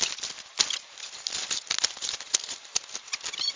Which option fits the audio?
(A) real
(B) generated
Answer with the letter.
A